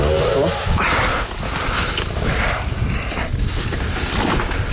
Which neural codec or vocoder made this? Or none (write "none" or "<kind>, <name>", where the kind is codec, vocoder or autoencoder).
none